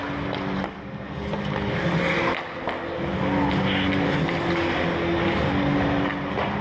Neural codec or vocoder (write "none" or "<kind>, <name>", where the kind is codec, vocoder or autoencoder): none